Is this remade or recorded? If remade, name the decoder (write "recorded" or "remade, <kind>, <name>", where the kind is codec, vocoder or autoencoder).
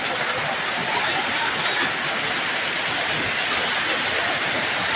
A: recorded